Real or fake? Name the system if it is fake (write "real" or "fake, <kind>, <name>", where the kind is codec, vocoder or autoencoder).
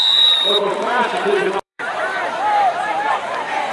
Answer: fake, vocoder, BigVGAN v2